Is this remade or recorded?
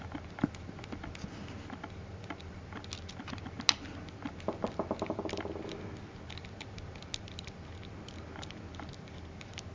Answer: recorded